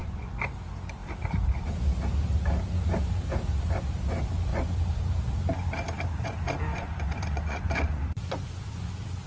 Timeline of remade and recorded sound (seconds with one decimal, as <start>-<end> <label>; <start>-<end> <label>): 0.0-0.5 remade; 0.5-6.7 recorded; 6.7-8.9 remade; 8.9-9.3 recorded